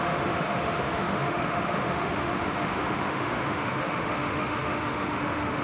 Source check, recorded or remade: remade